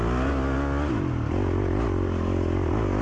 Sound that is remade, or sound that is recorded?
recorded